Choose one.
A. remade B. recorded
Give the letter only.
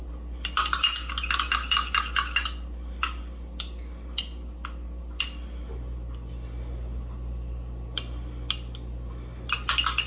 B